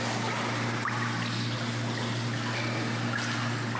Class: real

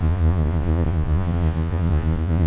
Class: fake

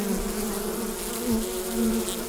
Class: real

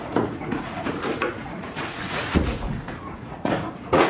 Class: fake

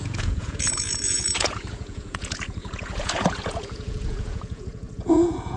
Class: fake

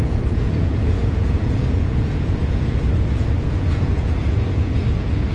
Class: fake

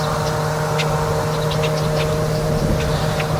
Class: real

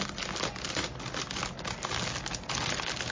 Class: real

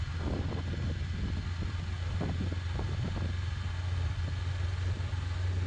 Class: real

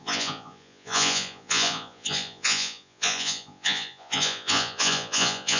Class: fake